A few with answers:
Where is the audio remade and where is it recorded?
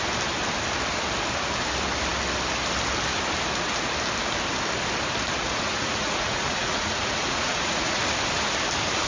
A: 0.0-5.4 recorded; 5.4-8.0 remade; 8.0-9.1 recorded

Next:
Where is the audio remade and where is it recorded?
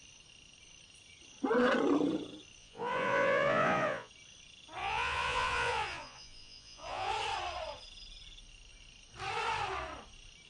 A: 0.0-2.6 recorded; 2.6-4.1 remade; 4.1-4.8 recorded; 4.8-7.1 remade; 7.1-10.5 recorded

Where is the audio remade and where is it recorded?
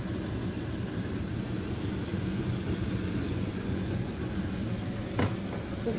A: 0.0-2.1 recorded; 2.1-2.7 remade; 2.7-3.2 recorded; 3.2-4.3 remade; 4.3-6.0 recorded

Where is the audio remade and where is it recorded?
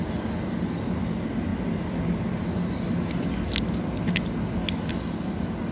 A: 0.0-5.7 recorded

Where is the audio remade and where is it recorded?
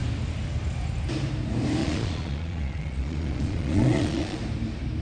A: 0.0-1.8 recorded; 1.8-4.4 remade; 4.4-5.0 recorded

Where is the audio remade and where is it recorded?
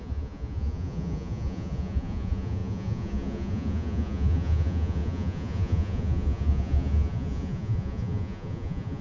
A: 0.0-9.0 remade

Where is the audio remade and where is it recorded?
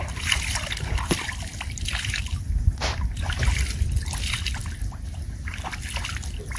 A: 0.0-6.6 recorded